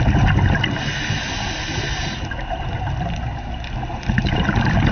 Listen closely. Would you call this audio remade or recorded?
recorded